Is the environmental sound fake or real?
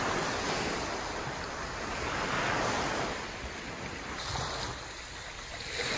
real